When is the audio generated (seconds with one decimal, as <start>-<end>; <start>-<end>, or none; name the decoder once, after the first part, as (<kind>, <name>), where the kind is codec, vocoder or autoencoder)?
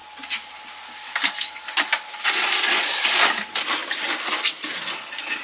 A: 0.0-3.8 (vocoder, BigVGAN v2); 4.8-5.4